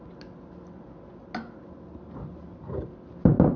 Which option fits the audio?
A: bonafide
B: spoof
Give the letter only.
A